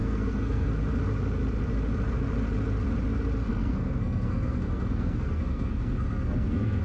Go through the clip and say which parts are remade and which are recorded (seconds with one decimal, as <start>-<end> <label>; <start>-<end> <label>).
0.0-0.7 remade; 0.7-3.5 recorded; 3.5-6.8 remade